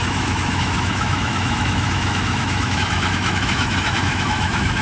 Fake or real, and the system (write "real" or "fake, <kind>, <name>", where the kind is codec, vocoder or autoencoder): fake, autoencoder, DAC-VAE